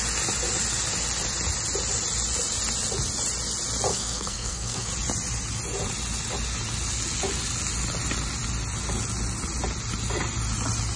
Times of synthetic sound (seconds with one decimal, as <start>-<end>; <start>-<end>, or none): 3.9-4.9